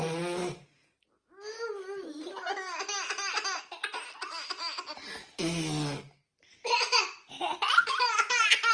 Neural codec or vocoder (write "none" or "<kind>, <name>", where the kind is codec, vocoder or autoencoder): none